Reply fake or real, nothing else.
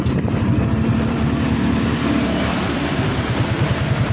fake